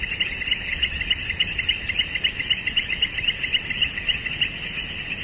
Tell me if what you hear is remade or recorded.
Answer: recorded